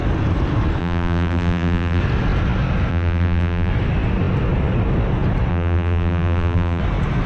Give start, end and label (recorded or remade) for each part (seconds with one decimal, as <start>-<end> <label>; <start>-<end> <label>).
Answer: 0.0-0.8 recorded; 0.8-2.0 remade; 2.0-2.9 recorded; 2.9-3.7 remade; 3.7-5.5 recorded; 5.5-6.8 remade; 6.8-7.3 recorded